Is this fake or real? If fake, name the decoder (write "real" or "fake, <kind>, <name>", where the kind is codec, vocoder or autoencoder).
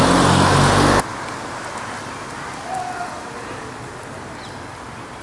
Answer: real